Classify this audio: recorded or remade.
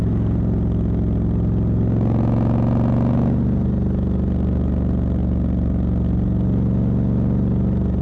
recorded